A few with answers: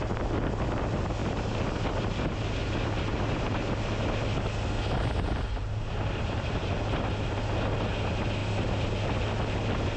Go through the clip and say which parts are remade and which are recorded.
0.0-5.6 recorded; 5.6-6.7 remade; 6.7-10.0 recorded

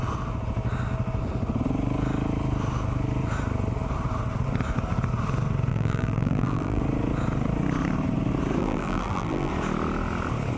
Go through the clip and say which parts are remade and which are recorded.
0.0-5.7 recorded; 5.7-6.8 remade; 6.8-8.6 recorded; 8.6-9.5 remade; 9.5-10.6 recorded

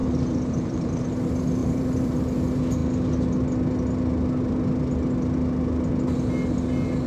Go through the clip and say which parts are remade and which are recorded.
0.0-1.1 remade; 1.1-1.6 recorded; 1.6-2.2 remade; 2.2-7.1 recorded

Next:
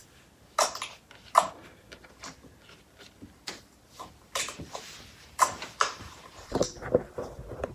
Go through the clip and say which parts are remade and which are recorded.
0.0-2.1 recorded; 2.1-7.7 remade